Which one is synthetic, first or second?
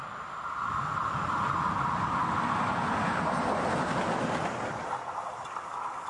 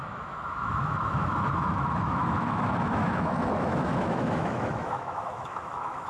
second